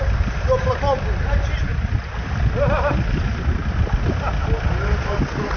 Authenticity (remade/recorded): recorded